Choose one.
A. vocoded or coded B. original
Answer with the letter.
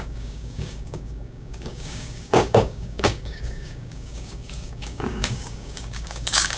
A